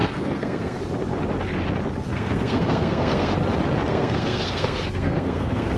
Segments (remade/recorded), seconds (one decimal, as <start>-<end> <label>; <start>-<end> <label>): 0.0-0.8 remade; 0.8-2.1 recorded; 2.1-3.3 remade; 3.3-3.9 recorded; 3.9-5.8 remade